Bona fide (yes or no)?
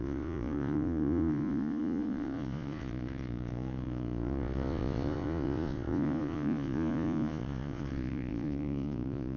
no